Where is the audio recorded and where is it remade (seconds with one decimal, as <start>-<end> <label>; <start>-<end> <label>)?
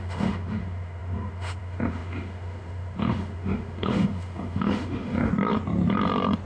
0.0-5.3 remade; 5.3-6.5 recorded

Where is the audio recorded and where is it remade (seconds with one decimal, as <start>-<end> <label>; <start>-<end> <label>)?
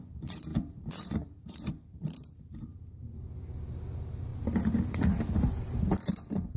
0.0-4.3 remade; 4.3-4.9 recorded; 4.9-6.6 remade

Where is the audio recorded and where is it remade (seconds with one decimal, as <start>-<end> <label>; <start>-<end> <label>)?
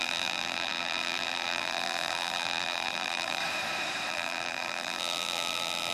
0.0-3.4 remade; 3.4-4.1 recorded; 4.1-5.9 remade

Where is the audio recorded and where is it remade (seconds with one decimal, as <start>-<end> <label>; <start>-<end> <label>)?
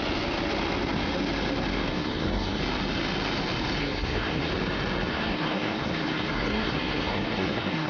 0.0-1.9 recorded; 1.9-2.6 remade; 2.6-3.8 recorded; 3.8-4.5 remade; 4.5-5.1 recorded; 5.1-7.9 remade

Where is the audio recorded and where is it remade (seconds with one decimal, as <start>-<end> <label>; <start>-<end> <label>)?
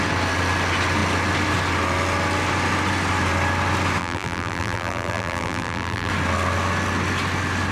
0.0-4.0 recorded; 4.0-6.1 remade; 6.1-7.7 recorded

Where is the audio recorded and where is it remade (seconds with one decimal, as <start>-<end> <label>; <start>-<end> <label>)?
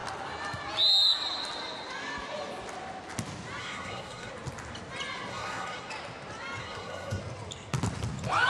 0.0-3.6 recorded; 3.6-4.3 remade; 4.3-5.3 recorded; 5.3-5.9 remade; 5.9-6.6 recorded; 6.6-7.2 remade; 7.2-8.5 recorded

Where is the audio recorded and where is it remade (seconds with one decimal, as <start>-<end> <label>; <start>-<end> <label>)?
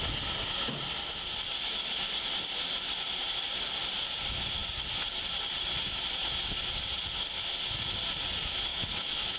0.0-8.7 recorded; 8.7-9.4 remade